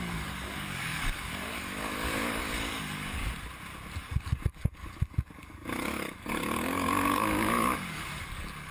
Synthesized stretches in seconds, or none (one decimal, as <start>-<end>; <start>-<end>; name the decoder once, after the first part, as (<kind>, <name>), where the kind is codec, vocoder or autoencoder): 0.0-3.2 (codec, DAC); 4.0-8.7